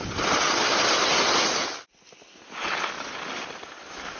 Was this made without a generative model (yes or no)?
yes